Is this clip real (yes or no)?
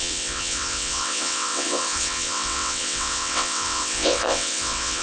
no